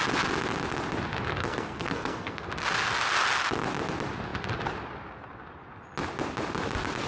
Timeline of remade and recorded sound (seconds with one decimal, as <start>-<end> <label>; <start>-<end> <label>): 0.0-1.3 recorded; 1.3-2.5 remade; 2.5-7.1 recorded